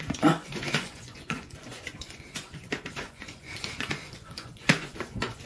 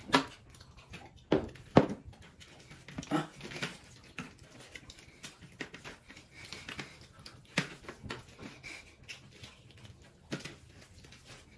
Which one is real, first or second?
second